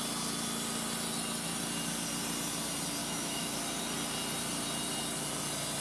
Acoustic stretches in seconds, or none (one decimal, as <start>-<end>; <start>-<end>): 0.0-3.0; 3.6-5.8